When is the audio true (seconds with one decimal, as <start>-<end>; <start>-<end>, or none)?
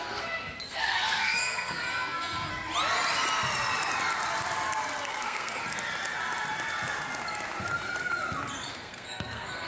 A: 2.5-5.1; 5.6-8.7